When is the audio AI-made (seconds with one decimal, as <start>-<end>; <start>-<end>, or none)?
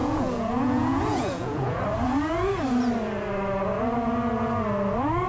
0.0-1.8